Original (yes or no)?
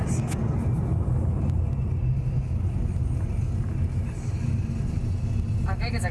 yes